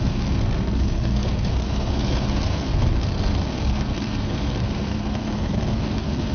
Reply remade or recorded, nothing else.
remade